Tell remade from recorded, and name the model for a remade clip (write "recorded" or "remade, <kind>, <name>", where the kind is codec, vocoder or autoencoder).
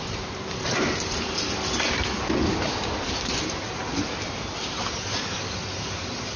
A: recorded